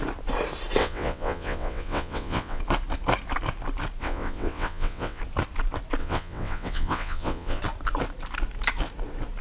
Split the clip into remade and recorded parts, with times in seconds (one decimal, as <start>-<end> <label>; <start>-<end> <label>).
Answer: 0.0-0.8 recorded; 0.8-2.6 remade; 2.6-4.0 recorded; 4.0-5.2 remade; 5.2-6.0 recorded; 6.0-7.6 remade; 7.6-9.4 recorded